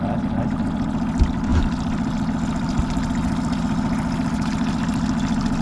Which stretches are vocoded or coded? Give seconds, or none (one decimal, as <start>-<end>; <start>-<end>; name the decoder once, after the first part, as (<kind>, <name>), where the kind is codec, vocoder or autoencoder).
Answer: none